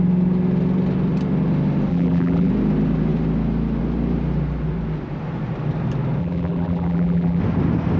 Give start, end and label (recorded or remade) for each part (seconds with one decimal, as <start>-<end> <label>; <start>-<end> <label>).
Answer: 0.0-1.9 recorded; 1.9-2.5 remade; 2.5-6.2 recorded; 6.2-7.4 remade; 7.4-8.0 recorded